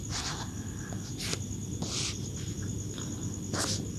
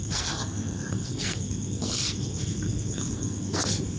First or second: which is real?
first